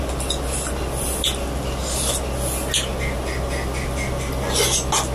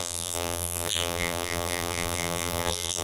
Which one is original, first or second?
first